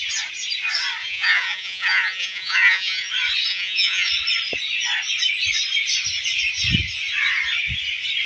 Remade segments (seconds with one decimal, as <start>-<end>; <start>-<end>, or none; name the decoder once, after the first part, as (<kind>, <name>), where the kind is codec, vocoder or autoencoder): 1.0-3.1 (vocoder, Vocos); 3.5-4.1